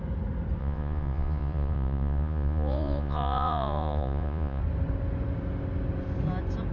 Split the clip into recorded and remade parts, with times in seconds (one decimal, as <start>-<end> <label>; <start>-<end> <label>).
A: 0.0-0.6 recorded; 0.6-4.6 remade; 4.6-6.7 recorded